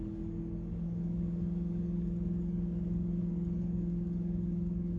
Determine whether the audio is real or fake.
fake